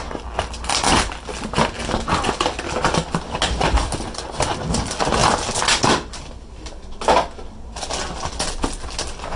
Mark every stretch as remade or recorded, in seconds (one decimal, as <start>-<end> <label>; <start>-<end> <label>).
0.0-9.4 recorded